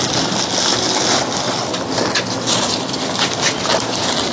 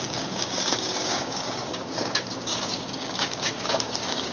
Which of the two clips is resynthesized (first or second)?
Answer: second